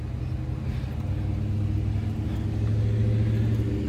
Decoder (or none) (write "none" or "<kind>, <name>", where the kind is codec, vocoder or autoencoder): none